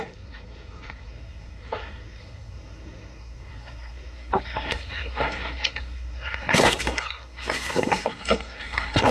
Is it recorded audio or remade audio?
remade